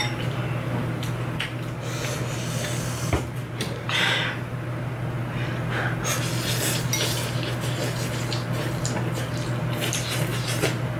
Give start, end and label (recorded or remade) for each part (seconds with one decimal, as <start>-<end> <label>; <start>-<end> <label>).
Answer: 0.0-3.4 recorded; 3.4-4.3 remade; 4.3-10.3 recorded; 10.3-11.0 remade